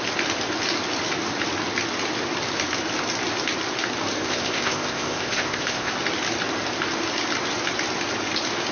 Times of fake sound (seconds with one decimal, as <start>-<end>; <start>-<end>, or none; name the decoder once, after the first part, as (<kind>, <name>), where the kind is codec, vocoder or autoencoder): 4.2-5.9 (codec, ZipCodec)